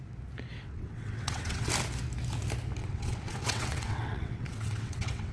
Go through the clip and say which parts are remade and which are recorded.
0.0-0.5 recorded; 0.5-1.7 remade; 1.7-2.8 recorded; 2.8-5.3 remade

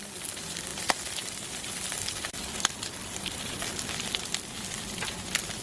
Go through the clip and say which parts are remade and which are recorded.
0.0-0.7 recorded; 0.7-2.5 remade; 2.5-3.0 recorded; 3.0-3.7 remade; 3.7-5.6 recorded

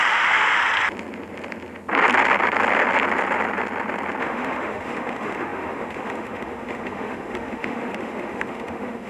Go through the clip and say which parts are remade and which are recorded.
0.0-0.6 remade; 0.6-4.2 recorded; 4.2-9.1 remade

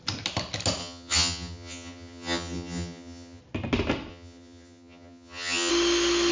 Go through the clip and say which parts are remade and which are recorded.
0.0-0.8 recorded; 0.8-3.4 remade; 3.4-4.1 recorded; 4.1-5.7 remade; 5.7-6.3 recorded

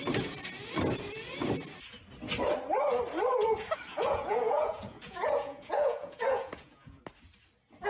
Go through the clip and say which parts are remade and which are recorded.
0.0-3.9 recorded; 3.9-7.0 remade; 7.0-7.9 recorded

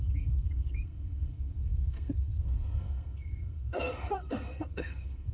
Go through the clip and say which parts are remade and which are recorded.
0.0-5.3 remade